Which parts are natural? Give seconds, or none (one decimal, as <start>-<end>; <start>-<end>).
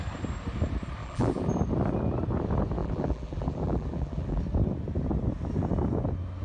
0.0-1.0; 1.5-2.8; 4.4-6.4